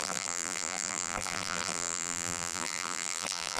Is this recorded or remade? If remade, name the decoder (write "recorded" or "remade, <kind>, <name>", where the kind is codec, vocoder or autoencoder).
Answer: remade, vocoder, BigVGAN v2